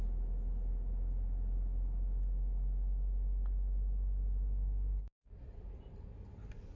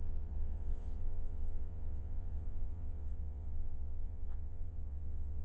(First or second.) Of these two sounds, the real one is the first